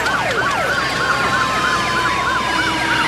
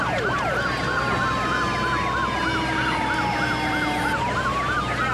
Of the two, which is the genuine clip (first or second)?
second